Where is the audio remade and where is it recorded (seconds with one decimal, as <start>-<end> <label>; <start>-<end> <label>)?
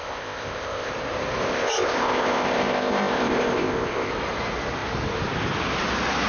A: 0.0-0.9 remade; 0.9-1.4 recorded; 1.4-4.1 remade; 4.1-6.3 recorded